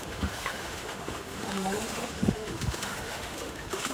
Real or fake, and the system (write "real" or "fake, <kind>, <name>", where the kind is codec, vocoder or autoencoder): fake, autoencoder, DAC-VAE